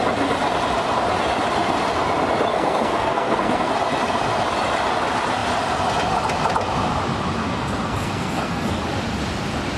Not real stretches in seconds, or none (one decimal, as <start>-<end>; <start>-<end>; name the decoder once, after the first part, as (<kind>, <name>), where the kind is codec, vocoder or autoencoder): 2.5-3.7 (codec, SNAC); 7.4-8.8

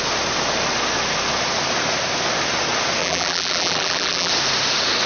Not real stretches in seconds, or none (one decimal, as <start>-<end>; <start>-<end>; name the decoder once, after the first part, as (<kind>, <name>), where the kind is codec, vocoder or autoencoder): 3.0-4.3 (vocoder, BigVGAN v2)

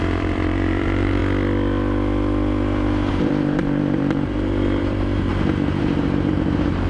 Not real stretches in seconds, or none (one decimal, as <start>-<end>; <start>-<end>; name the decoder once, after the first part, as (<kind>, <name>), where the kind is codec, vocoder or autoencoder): 0.0-1.2 (vocoder, BigVGAN v2); 3.1-5.3; 5.8-6.9

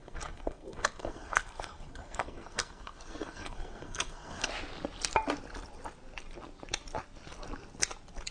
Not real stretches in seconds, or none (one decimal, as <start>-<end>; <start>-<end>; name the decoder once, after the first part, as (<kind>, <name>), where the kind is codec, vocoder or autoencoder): 0.0-4.5 (codec, SNAC)

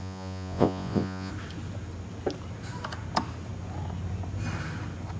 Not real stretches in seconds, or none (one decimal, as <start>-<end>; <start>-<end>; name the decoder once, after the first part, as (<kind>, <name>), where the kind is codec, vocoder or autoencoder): 0.0-1.3 (vocoder, Vocos)

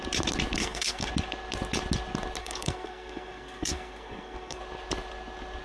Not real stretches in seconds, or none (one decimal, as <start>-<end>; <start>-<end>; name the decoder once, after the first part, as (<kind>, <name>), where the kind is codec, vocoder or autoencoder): 0.6-1.1 (codec, SNAC); 2.4-4.6